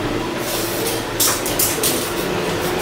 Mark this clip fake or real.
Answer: real